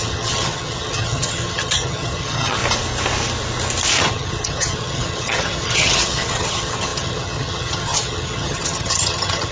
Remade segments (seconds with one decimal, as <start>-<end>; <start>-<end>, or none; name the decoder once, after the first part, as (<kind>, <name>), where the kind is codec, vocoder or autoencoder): 0.0-2.6 (vocoder, HiFi-GAN); 4.0-9.5